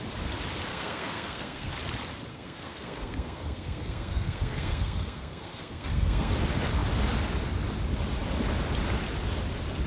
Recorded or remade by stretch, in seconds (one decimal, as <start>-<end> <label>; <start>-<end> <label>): 0.0-0.7 recorded; 0.7-1.7 remade; 1.7-2.3 recorded; 2.3-6.3 remade; 6.3-9.9 recorded